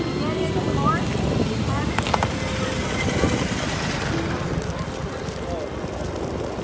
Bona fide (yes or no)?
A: yes